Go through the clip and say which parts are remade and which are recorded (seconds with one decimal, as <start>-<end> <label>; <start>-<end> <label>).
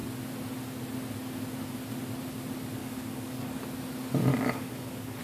0.0-2.8 recorded; 2.8-3.6 remade; 3.6-4.3 recorded; 4.3-5.2 remade